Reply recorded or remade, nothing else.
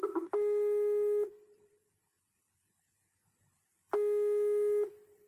recorded